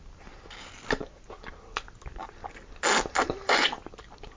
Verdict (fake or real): real